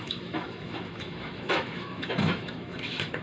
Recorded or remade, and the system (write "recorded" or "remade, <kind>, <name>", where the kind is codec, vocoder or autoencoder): remade, autoencoder, DAC-VAE